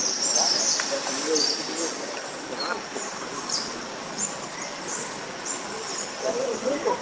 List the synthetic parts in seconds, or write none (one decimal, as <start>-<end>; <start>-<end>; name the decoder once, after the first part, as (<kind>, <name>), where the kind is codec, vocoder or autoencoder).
none